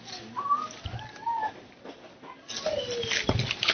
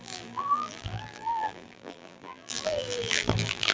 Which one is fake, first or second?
second